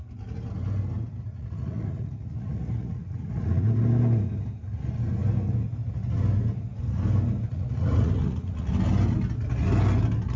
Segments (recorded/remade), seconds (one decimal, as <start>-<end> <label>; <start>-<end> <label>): 0.0-1.3 recorded; 1.3-3.7 remade; 3.7-7.5 recorded; 7.5-8.7 remade; 8.7-10.4 recorded